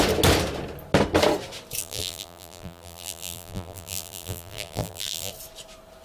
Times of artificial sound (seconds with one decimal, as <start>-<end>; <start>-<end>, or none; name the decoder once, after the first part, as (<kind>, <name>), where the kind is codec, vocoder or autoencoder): 1.8-5.3 (vocoder, BigVGAN v2)